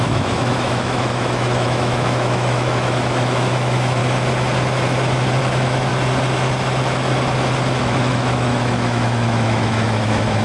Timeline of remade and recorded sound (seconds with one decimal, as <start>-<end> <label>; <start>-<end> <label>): 0.0-4.0 remade; 4.0-5.4 recorded; 5.4-5.9 remade; 5.9-7.8 recorded; 7.8-10.4 remade